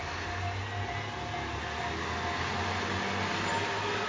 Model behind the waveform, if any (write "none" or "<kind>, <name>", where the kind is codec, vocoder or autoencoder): none